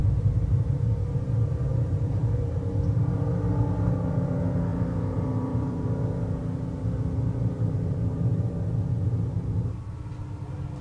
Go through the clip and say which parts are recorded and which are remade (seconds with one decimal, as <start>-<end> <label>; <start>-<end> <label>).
0.0-2.7 remade; 2.7-4.7 recorded; 4.7-8.5 remade; 8.5-10.8 recorded